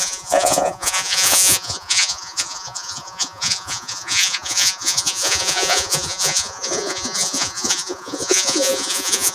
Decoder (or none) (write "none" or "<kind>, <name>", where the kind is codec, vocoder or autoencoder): vocoder, Vocos